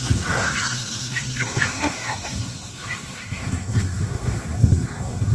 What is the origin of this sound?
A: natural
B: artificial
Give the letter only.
B